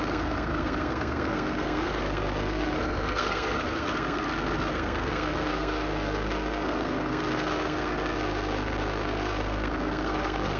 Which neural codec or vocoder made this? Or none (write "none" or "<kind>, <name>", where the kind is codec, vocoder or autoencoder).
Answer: codec, SNAC